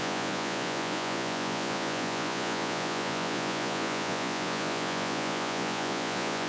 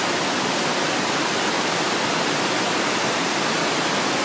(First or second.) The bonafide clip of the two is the second